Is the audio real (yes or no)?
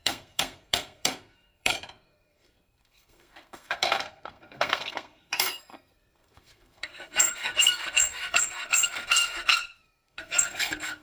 no